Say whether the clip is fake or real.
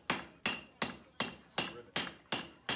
real